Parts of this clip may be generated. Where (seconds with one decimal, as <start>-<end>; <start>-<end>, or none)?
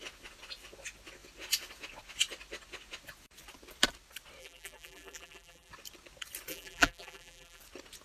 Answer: 4.4-5.7; 6.5-7.6